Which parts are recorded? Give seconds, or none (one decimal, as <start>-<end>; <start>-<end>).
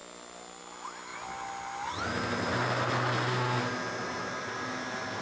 0.0-5.2